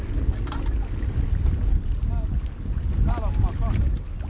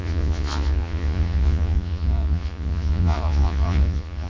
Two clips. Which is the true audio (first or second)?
first